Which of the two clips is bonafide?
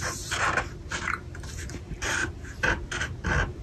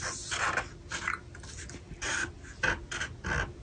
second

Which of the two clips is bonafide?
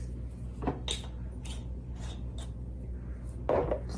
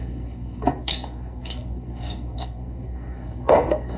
first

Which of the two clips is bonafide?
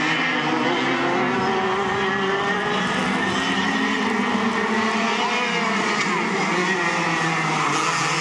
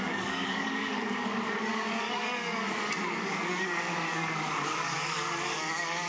first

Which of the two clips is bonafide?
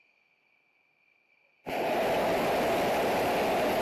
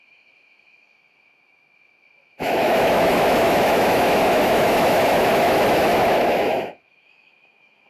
first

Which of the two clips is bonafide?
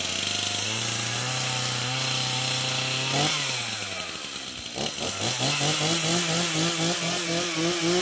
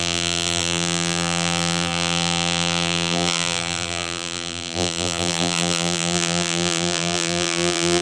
first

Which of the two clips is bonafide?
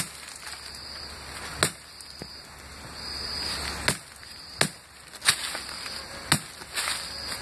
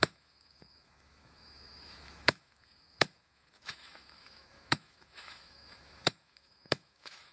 first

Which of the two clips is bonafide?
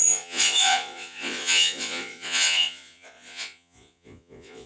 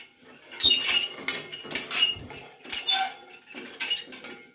second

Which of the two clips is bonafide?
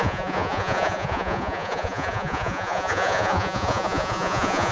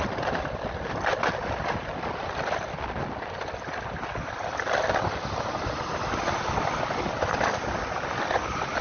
second